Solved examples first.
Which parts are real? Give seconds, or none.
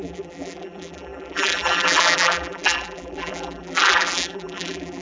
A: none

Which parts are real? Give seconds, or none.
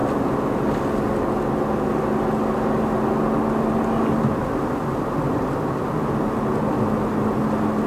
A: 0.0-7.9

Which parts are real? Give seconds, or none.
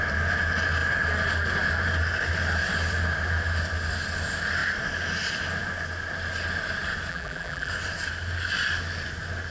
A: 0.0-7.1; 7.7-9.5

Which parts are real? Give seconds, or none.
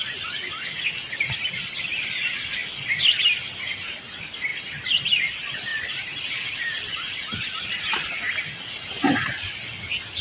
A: 0.0-2.6; 3.2-4.5; 5.3-5.7; 7.8-10.2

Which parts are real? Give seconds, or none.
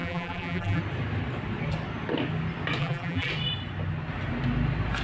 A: 0.8-2.8; 3.3-5.0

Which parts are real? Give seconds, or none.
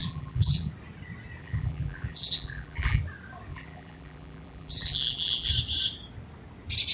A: 0.7-1.4; 3.0-3.5; 5.5-6.9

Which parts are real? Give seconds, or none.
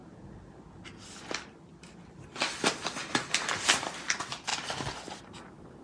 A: 0.0-5.8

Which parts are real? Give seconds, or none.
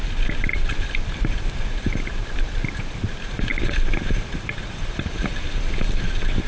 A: 0.0-0.5; 5.3-6.5